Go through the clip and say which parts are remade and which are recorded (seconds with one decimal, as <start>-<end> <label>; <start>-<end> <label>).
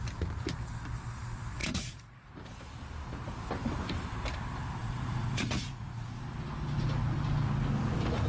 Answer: 0.0-1.6 recorded; 1.6-2.3 remade; 2.3-4.8 recorded; 4.8-6.2 remade; 6.2-8.3 recorded